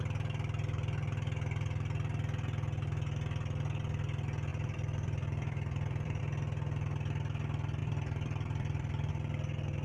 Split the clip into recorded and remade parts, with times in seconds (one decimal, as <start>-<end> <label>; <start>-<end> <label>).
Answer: 0.0-4.5 recorded; 4.5-6.2 remade; 6.2-7.8 recorded; 7.8-9.1 remade; 9.1-9.8 recorded